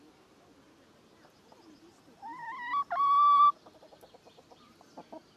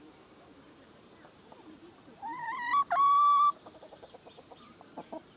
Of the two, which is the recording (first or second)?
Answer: first